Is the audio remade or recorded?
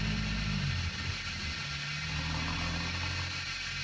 recorded